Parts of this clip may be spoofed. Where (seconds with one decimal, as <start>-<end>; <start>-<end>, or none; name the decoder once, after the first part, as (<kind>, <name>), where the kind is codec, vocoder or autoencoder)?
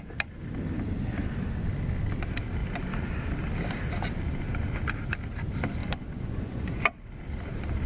5.8-6.8 (vocoder, Vocos)